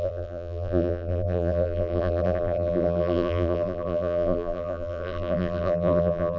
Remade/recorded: remade